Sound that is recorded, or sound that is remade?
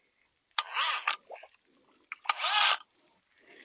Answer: recorded